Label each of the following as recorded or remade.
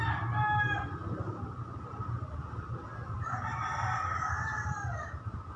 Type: recorded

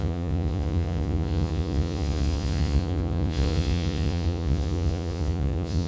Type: remade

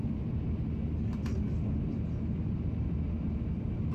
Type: recorded